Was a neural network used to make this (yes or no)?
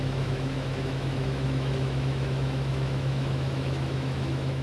yes